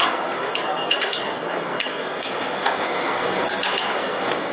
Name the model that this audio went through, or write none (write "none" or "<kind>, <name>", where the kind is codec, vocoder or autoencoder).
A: codec, SNAC